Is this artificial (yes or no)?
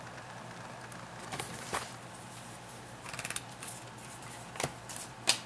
no